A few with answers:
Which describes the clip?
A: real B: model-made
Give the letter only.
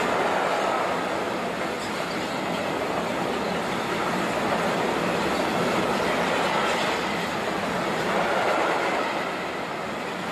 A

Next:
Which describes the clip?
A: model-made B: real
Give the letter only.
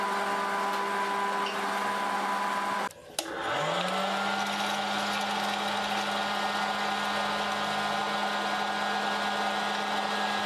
B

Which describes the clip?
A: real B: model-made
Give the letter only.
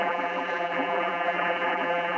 B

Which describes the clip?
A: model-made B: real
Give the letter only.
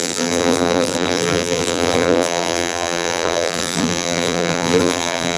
A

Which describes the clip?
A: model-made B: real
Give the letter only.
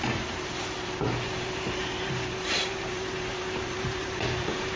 A